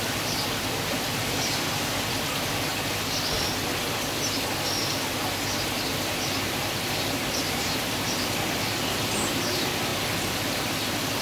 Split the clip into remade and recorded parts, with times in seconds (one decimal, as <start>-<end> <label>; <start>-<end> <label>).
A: 0.0-2.7 remade; 2.7-7.3 recorded; 7.3-11.2 remade

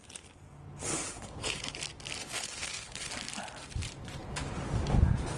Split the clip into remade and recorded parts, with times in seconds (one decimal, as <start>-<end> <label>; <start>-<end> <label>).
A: 0.0-0.9 recorded; 0.9-1.7 remade; 1.7-2.2 recorded; 2.2-3.1 remade; 3.1-5.4 recorded

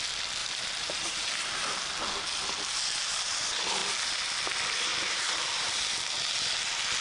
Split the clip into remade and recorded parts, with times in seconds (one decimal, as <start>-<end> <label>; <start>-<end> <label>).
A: 0.0-0.4 recorded; 0.4-1.9 remade; 1.9-4.9 recorded; 4.9-5.8 remade; 5.8-7.0 recorded

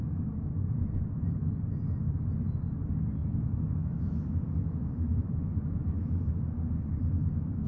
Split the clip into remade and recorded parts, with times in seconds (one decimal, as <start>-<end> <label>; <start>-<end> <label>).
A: 0.0-3.2 recorded; 3.2-6.4 remade; 6.4-7.7 recorded

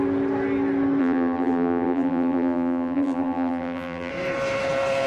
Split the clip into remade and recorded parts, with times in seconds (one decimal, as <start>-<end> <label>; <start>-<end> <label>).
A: 0.0-1.0 recorded; 1.0-4.1 remade; 4.1-5.1 recorded

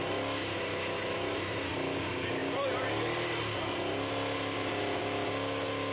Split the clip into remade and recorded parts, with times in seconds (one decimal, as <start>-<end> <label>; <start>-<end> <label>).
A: 0.0-0.7 recorded; 0.7-1.7 remade; 1.7-5.9 recorded

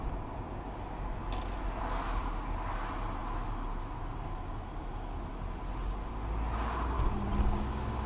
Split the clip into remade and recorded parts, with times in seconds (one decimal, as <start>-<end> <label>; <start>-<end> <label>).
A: 0.0-8.1 recorded

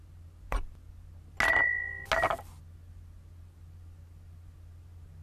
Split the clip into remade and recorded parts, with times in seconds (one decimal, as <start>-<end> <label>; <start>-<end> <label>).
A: 0.0-5.2 recorded